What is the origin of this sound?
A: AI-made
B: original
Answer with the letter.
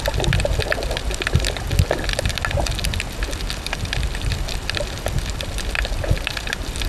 B